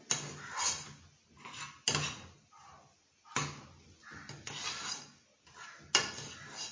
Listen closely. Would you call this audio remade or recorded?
recorded